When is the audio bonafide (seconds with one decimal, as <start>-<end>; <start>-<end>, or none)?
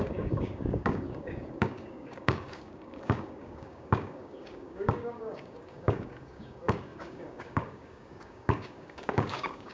none